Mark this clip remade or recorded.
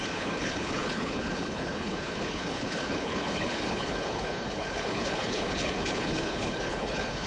remade